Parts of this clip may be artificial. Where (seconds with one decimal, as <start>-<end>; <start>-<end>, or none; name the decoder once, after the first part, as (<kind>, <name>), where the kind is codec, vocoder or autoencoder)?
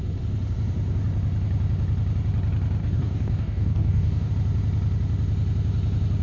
2.8-4.3 (codec, DAC)